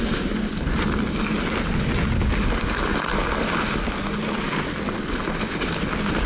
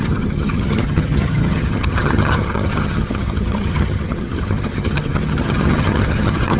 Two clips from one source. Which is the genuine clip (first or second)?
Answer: first